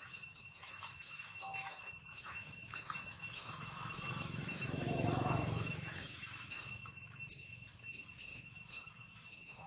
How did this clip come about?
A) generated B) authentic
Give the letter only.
A